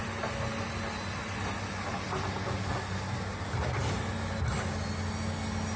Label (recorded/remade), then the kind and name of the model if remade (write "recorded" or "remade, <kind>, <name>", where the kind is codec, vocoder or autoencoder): recorded